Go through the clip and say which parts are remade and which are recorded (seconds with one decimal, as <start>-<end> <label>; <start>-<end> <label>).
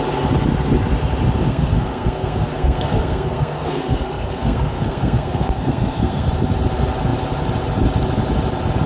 0.0-1.5 recorded; 1.5-6.3 remade; 6.3-8.9 recorded